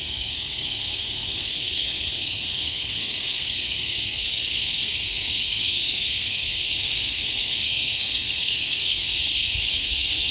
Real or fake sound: fake